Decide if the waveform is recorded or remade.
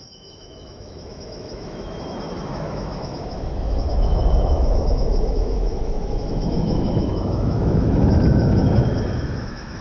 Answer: remade